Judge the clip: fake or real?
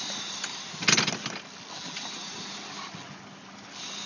real